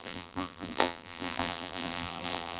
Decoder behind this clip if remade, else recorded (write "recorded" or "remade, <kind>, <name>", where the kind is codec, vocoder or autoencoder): remade, vocoder, BigVGAN v2